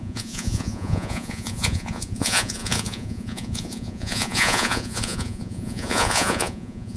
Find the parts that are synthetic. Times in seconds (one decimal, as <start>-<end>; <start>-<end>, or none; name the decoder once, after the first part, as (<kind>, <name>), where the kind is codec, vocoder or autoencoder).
0.0-7.0 (vocoder, Vocos)